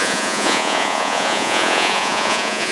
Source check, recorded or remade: remade